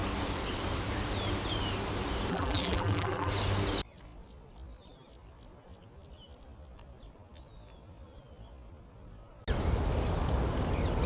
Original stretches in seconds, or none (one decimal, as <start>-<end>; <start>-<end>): 0.0-2.3; 3.3-11.1

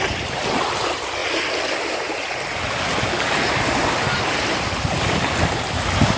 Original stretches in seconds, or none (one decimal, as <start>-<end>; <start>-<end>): 0.0-6.2

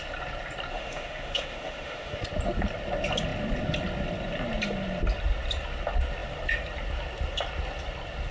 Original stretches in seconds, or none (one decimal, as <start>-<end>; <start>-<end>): 0.0-0.7; 2.2-8.3

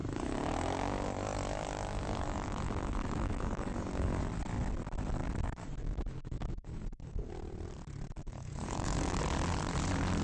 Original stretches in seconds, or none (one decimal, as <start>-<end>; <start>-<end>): 4.2-5.2; 7.3-8.2; 9.2-10.2

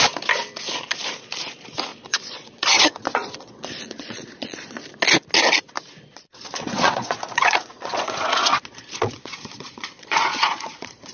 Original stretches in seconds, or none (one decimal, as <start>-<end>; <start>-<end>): 0.0-1.9; 4.8-6.1

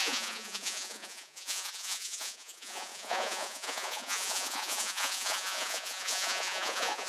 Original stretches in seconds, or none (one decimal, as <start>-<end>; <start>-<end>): none

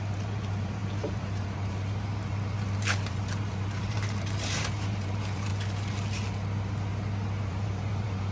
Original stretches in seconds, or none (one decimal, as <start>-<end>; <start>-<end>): 5.5-7.5